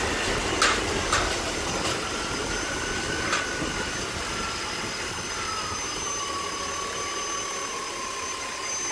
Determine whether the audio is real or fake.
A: real